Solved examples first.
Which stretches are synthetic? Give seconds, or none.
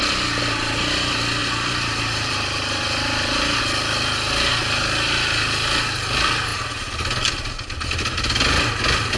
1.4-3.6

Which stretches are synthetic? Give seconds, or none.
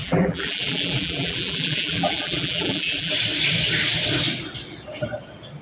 0.0-3.1